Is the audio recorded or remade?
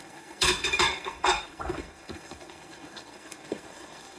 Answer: remade